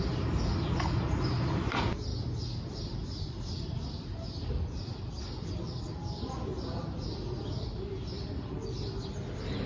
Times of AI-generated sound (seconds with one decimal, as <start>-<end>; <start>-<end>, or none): none